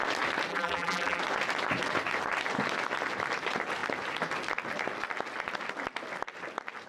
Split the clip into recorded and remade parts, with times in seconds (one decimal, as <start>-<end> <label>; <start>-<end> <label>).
0.0-0.5 recorded; 0.5-1.2 remade; 1.2-6.9 recorded